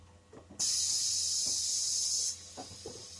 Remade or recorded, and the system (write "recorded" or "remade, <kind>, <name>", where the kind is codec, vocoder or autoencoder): recorded